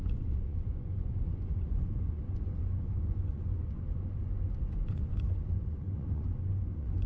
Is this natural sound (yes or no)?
no